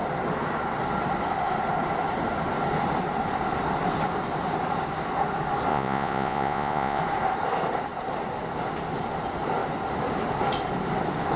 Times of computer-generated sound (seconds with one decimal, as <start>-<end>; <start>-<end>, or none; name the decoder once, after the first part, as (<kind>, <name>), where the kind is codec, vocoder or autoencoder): 5.7-7.0 (vocoder, Vocos)